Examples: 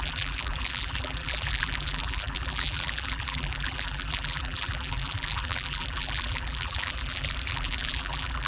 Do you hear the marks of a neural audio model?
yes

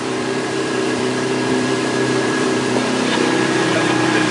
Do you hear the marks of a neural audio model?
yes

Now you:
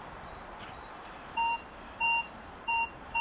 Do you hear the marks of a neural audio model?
yes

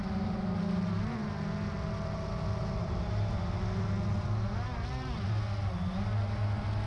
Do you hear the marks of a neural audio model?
no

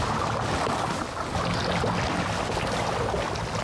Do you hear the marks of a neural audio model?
no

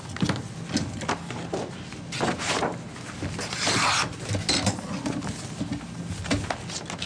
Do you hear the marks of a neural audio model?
no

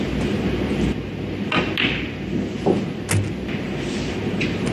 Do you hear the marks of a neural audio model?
no